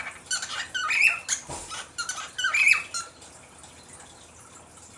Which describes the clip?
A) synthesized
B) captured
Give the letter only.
B